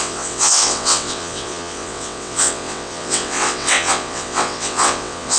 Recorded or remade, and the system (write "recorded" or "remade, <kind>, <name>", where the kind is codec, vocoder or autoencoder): remade, vocoder, WaveNeXt